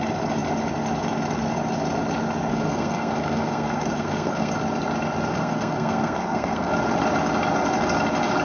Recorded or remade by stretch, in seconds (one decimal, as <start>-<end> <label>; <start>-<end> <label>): 0.0-2.5 recorded; 2.5-4.5 remade; 4.5-5.4 recorded; 5.4-6.7 remade; 6.7-8.4 recorded

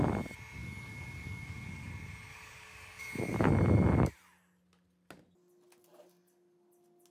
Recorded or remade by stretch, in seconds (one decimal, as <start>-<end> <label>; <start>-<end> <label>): 0.0-0.6 recorded; 0.6-1.9 remade; 1.9-2.3 recorded; 2.3-3.5 remade; 3.5-7.1 recorded

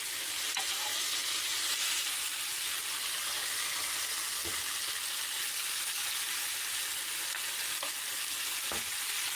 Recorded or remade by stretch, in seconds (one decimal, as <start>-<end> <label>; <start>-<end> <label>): 0.0-9.4 recorded

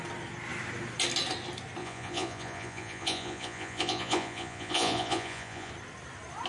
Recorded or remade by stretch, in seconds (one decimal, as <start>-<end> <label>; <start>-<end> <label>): 0.0-1.8 recorded; 1.8-5.7 remade; 5.7-6.5 recorded